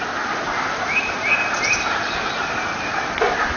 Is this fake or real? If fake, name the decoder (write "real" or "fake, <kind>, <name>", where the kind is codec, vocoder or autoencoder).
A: real